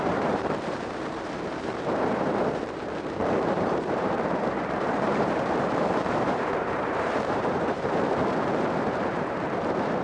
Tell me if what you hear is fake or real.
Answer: fake